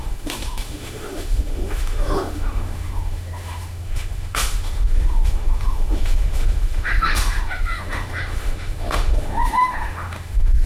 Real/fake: fake